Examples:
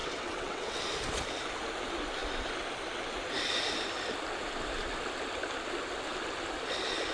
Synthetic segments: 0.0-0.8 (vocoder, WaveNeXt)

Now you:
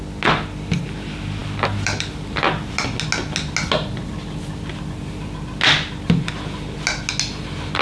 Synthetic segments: 1.4-2.8 (vocoder, BigVGAN v2)

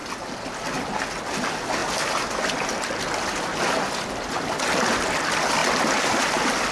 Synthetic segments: 5.6-6.7 (vocoder, BigVGAN v2)